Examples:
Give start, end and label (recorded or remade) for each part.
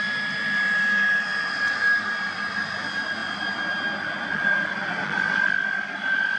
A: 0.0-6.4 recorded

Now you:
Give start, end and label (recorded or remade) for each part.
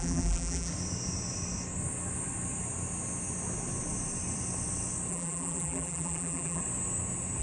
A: 0.0-0.7 remade; 0.7-5.1 recorded; 5.1-6.6 remade; 6.6-7.4 recorded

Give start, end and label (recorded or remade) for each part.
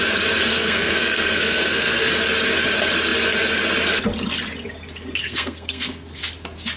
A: 0.0-0.5 recorded; 0.5-2.1 remade; 2.1-5.2 recorded; 5.2-6.2 remade; 6.2-6.8 recorded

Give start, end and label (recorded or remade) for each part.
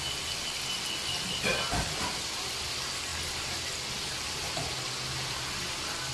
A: 0.0-1.5 recorded; 1.5-2.7 remade; 2.7-3.1 recorded; 3.1-6.1 remade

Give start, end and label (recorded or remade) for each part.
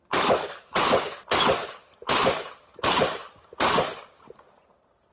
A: 0.0-5.1 recorded